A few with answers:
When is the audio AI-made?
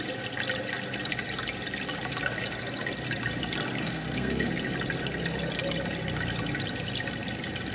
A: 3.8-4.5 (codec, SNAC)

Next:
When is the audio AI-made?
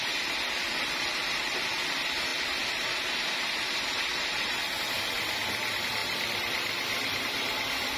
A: none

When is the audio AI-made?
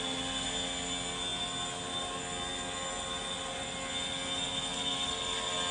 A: none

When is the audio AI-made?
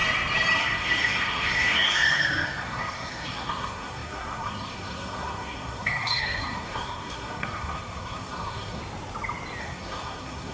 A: 0.6-8.8 (codec, SNAC); 9.6-10.5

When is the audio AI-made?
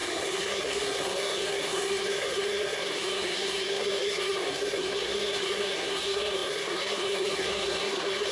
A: 0.0-8.3 (codec, SNAC)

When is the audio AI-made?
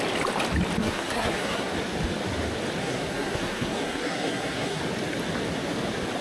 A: 0.8-1.7 (codec, SNAC); 2.8-4.8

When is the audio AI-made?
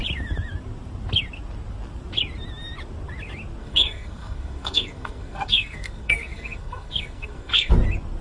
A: 3.6-7.7 (codec, SNAC)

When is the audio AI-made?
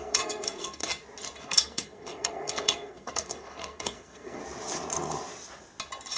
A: 0.0-0.8 (codec, SNAC); 1.4-4.4